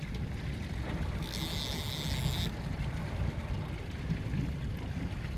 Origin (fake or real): real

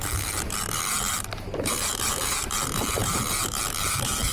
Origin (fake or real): fake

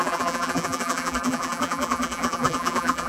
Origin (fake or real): fake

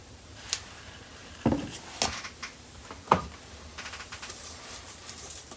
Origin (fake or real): real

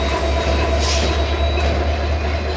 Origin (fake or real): real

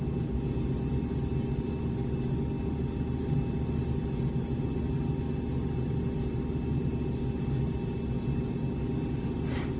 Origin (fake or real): real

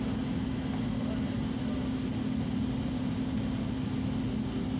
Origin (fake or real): real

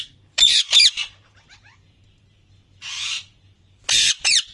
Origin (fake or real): fake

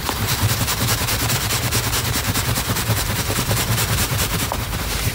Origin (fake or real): fake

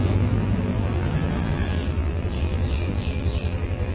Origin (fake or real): fake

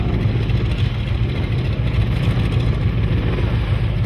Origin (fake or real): real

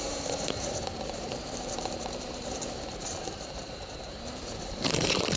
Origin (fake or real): fake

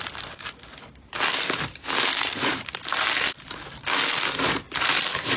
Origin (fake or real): real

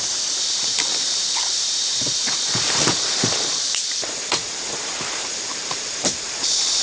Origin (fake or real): fake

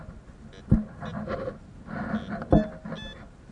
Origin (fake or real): real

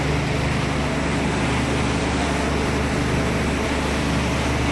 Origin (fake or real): real